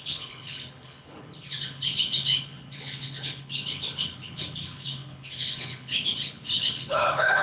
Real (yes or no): no